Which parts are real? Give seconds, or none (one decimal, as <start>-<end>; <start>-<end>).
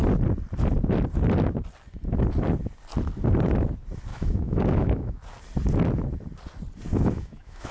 0.0-4.1; 5.2-6.9